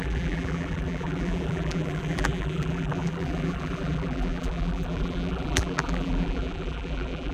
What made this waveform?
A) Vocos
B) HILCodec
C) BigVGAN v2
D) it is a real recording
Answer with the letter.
C